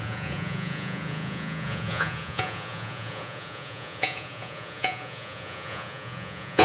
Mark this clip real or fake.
fake